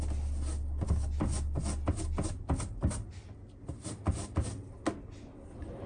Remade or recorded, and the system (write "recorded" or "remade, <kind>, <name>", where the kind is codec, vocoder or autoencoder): recorded